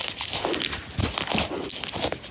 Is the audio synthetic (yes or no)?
no